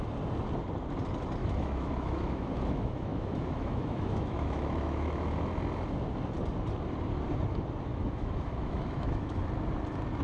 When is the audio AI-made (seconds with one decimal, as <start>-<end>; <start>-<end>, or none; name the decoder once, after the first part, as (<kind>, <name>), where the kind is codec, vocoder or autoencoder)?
1.4-5.3 (autoencoder, DAC-VAE); 7.9-9.4